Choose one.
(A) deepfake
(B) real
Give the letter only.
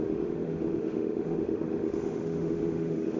A